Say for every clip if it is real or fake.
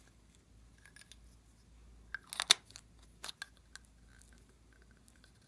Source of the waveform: real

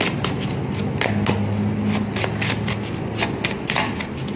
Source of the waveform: real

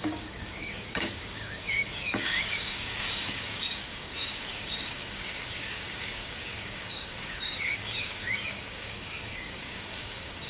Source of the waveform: fake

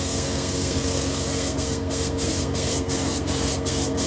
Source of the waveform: fake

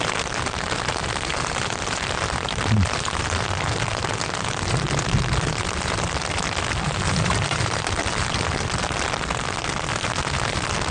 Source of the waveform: real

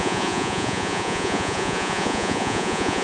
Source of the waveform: fake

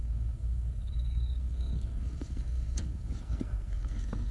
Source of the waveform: fake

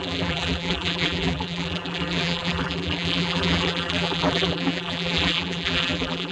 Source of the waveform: fake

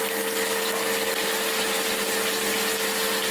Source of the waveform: real